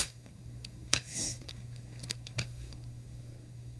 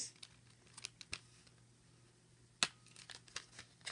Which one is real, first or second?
second